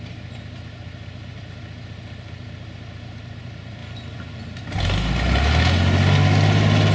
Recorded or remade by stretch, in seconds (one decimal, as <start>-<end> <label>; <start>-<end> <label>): 0.0-6.9 recorded